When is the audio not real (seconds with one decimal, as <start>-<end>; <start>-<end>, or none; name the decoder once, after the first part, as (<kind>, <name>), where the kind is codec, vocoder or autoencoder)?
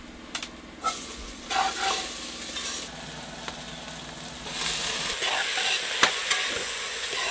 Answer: 0.8-1.4 (vocoder, Vocos); 6.1-7.3